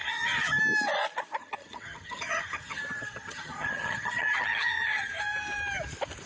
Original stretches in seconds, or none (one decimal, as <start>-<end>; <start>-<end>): 0.6-1.4; 5.2-6.3

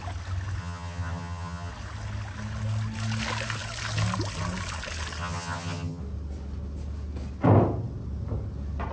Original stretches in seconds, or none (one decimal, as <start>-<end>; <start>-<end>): 0.0-0.6; 1.7-5.2; 6.0-8.9

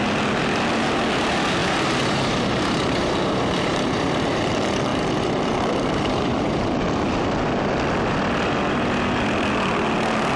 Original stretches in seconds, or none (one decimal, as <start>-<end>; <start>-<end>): 0.0-1.6; 4.5-4.9; 6.6-10.4

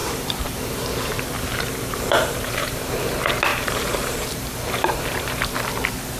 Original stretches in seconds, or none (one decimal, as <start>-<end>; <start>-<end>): 3.1-3.5; 5.4-6.2